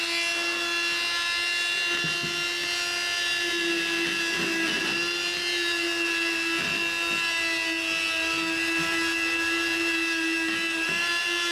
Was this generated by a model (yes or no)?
no